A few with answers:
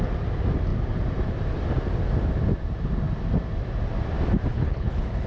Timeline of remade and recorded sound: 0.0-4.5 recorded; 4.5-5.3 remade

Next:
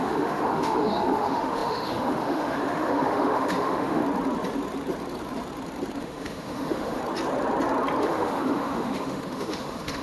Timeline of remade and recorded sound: 0.0-4.0 remade; 4.0-6.0 recorded; 6.0-7.0 remade; 7.0-8.0 recorded; 8.0-10.0 remade

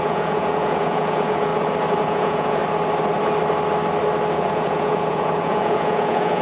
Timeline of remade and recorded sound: 0.0-1.5 remade; 1.5-2.0 recorded; 2.0-2.6 remade; 2.6-4.3 recorded; 4.3-6.4 remade

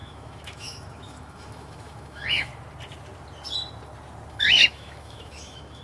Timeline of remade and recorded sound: 0.0-2.5 remade; 2.5-4.3 recorded; 4.3-5.8 remade

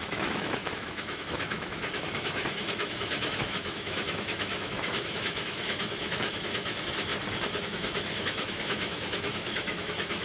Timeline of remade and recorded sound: 0.0-7.1 remade; 7.1-7.6 recorded; 7.6-10.2 remade

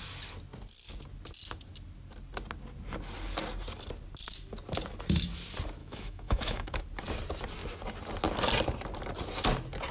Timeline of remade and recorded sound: 0.0-5.8 recorded; 5.8-6.8 remade; 6.8-9.9 recorded

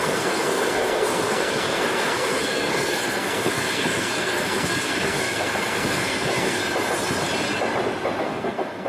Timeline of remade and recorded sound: 0.0-6.6 remade; 6.6-8.2 recorded; 8.2-8.9 remade